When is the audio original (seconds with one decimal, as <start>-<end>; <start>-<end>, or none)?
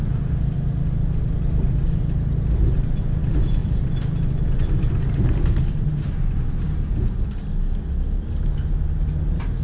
0.0-9.6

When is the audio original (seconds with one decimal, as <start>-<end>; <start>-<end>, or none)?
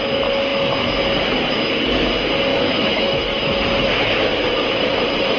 0.0-2.5; 3.6-5.4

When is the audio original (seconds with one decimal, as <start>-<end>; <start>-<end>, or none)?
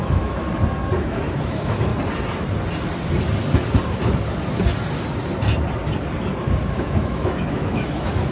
0.4-1.0; 1.9-6.7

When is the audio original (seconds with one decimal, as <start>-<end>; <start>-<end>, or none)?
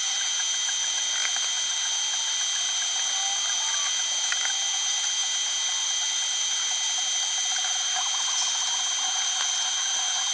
0.0-10.3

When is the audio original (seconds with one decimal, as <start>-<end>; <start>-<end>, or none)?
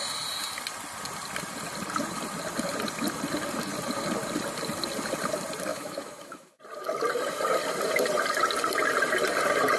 0.0-5.7; 6.6-9.8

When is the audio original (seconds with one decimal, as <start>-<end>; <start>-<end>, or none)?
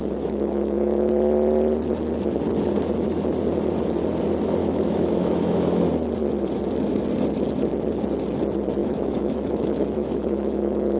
1.1-4.6; 5.9-8.8